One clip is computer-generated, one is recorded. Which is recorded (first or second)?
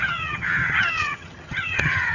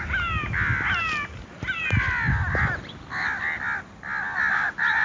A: second